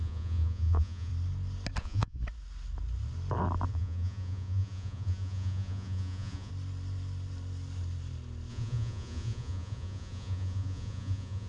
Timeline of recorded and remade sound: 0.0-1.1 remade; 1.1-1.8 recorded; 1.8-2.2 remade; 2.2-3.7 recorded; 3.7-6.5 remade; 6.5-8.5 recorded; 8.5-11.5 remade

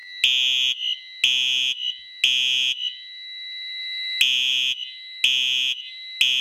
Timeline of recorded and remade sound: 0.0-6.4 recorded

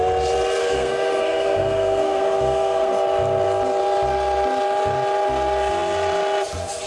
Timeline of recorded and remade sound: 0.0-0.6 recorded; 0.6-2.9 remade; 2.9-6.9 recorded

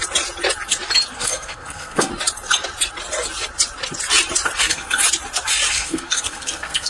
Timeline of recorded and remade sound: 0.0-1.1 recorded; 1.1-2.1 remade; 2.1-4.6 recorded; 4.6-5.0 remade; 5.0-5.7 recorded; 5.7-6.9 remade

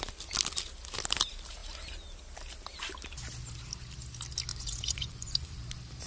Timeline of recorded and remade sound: 0.0-4.5 recorded; 4.5-5.6 remade; 5.6-6.1 recorded

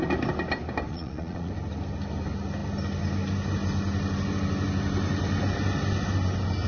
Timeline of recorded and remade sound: 0.0-0.9 recorded; 0.9-1.5 remade; 1.5-6.7 recorded

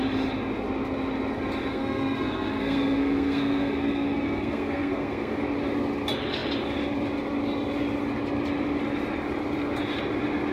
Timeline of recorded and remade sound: 0.0-1.7 recorded; 1.7-5.4 remade; 5.4-10.5 recorded

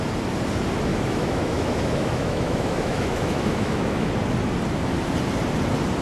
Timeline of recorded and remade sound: 0.0-0.9 recorded; 0.9-4.1 remade; 4.1-6.0 recorded